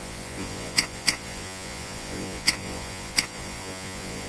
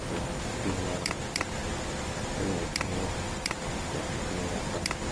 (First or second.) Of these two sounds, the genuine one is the second